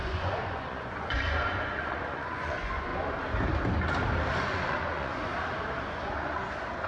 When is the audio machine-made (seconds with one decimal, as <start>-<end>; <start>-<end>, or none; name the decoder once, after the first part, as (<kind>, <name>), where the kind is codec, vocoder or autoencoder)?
0.0-2.9 (vocoder, Vocos); 4.4-5.3; 5.8-6.9

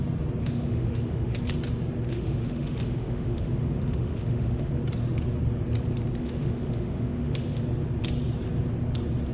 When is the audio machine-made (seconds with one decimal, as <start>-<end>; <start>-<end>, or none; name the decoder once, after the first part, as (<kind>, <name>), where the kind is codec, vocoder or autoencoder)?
0.4-1.4 (autoencoder, DAC-VAE); 2.1-4.7; 6.2-7.6

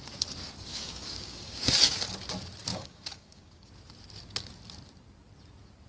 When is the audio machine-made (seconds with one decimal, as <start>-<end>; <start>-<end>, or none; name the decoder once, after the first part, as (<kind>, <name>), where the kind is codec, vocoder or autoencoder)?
0.7-1.7 (codec, DAC); 2.7-3.7

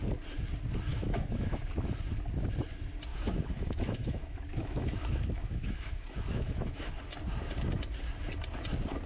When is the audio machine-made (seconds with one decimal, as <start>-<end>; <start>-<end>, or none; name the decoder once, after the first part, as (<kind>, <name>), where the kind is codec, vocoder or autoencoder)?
0.9-1.6 (autoencoder, DAC-VAE); 3.1-6.9

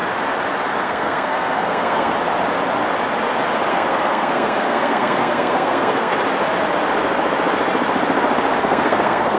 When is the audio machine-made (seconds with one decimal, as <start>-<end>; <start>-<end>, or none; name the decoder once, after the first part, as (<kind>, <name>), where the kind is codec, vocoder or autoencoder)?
0.8-2.1 (codec, SNAC); 3.7-6.1; 8.6-9.4

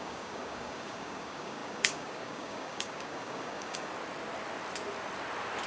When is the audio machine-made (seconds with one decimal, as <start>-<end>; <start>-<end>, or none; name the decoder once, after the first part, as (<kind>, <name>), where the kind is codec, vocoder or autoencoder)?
0.0-3.9 (codec, DAC)